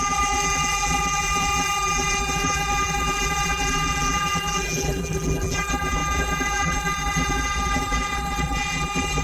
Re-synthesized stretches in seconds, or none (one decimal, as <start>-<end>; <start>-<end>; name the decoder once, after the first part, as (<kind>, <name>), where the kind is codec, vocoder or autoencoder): 0.0-9.2 (vocoder, BigVGAN v2)